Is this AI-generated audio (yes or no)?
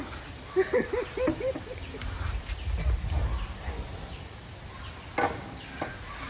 no